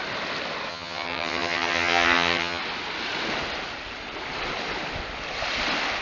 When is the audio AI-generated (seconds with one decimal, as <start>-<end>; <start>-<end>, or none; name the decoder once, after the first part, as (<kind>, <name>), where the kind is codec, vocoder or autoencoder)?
0.7-2.6 (vocoder, HiFi-GAN)